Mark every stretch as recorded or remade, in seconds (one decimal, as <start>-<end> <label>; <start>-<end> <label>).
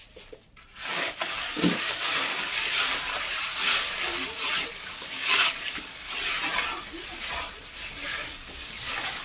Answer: 0.0-0.9 recorded; 0.9-2.5 remade; 2.5-4.7 recorded; 4.7-6.1 remade; 6.1-8.1 recorded; 8.1-9.2 remade